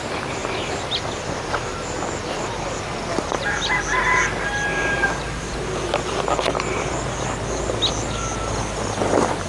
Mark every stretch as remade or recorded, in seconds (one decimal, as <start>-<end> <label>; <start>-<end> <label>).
0.0-9.5 recorded